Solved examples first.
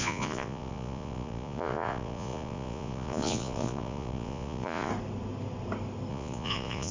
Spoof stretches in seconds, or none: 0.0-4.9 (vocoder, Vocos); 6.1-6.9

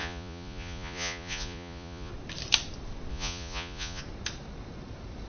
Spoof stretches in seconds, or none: 0.0-2.1 (vocoder, Vocos); 3.1-4.0

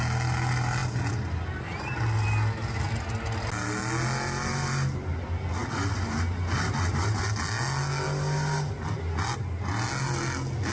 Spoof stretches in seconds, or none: none

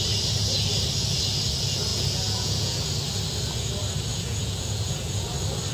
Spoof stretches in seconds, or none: 1.9-2.8 (vocoder, Vocos); 4.1-5.3

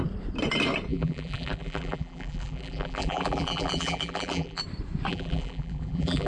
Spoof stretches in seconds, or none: 0.9-4.6 (vocoder, BigVGAN v2); 5.1-6.3